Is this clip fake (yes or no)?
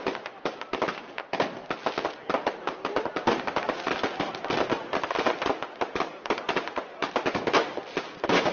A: no